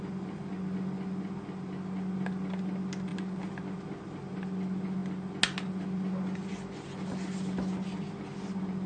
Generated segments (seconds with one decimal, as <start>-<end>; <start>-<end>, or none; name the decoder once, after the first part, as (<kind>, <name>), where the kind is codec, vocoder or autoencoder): none